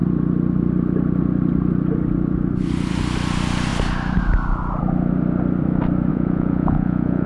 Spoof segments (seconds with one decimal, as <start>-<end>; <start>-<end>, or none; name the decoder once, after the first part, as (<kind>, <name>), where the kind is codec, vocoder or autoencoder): 6.1-7.3 (vocoder, Vocos)